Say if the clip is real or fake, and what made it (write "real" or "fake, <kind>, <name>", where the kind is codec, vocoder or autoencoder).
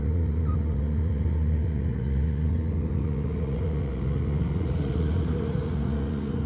fake, vocoder, Vocos